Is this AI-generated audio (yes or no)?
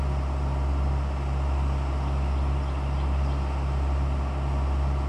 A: no